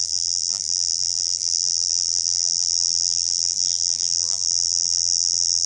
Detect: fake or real fake